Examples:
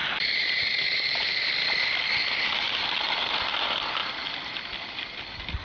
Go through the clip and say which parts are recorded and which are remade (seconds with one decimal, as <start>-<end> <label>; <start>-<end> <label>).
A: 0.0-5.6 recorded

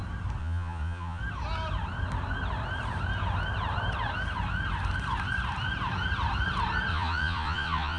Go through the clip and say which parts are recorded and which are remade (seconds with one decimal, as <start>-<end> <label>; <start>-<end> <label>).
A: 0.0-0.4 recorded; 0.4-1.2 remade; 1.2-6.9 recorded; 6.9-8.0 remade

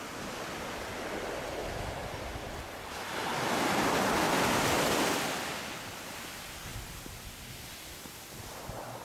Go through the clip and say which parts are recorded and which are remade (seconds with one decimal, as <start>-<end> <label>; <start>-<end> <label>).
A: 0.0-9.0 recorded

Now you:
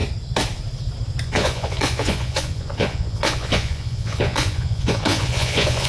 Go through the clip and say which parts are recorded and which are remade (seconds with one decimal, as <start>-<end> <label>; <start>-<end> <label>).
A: 0.0-1.2 recorded; 1.2-5.9 remade